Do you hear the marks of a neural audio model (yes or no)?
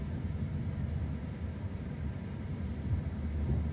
no